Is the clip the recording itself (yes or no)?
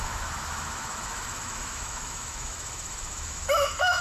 no